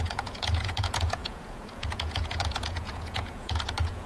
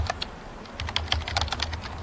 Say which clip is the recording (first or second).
second